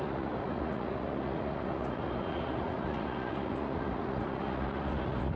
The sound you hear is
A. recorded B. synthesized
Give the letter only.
B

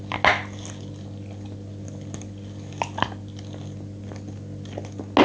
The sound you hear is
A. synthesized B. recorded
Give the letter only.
B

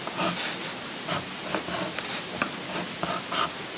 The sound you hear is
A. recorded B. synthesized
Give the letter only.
A